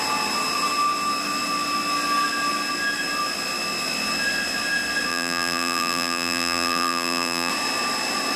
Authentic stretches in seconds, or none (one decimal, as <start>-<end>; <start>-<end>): 0.0-5.1; 7.5-8.4